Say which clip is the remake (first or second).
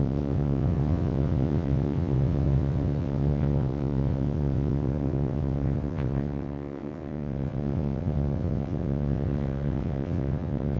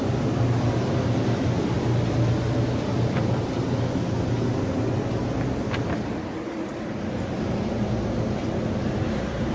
first